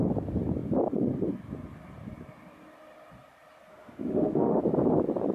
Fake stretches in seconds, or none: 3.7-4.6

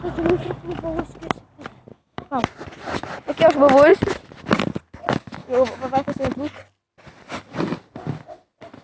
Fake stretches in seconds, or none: 1.9-2.4; 5.4-6.3

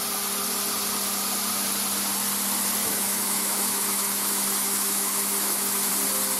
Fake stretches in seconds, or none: 2.8-5.9

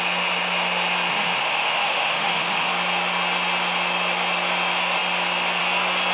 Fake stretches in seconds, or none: 1.1-2.7

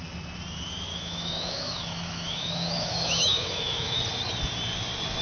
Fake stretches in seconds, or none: 0.9-4.0

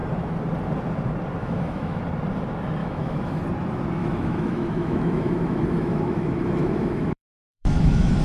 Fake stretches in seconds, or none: 1.4-2.0; 2.8-3.4; 4.0-8.2

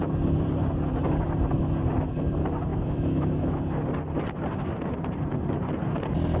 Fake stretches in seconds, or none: 2.7-3.6